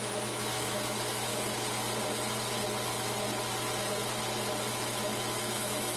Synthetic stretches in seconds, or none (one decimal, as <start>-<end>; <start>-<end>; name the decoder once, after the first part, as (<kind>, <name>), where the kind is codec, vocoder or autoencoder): 0.0-1.3 (autoencoder, DAC-VAE); 4.7-6.0